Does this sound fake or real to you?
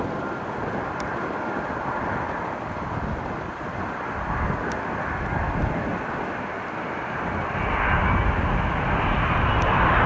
real